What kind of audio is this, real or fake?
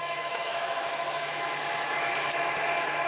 fake